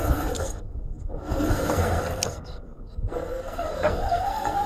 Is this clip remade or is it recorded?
remade